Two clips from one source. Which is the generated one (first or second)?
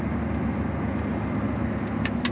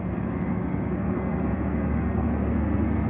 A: second